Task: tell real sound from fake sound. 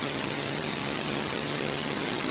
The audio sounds fake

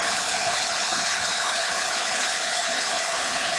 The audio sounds fake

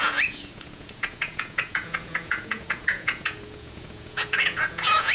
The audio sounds fake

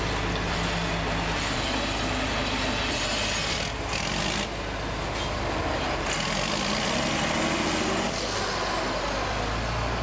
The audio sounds real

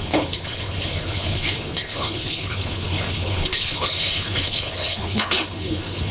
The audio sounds fake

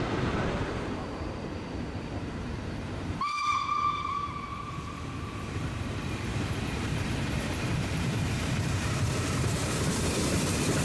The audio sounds fake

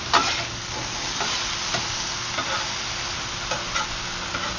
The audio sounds real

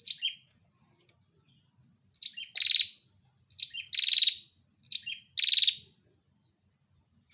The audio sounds real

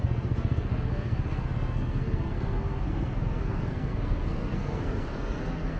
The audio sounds fake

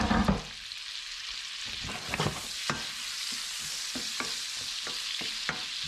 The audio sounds real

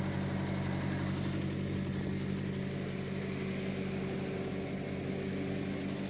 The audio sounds real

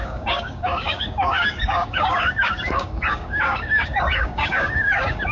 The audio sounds fake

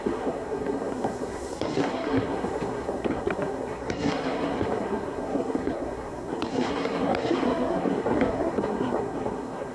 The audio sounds fake